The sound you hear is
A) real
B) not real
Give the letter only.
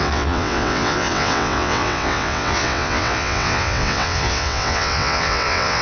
B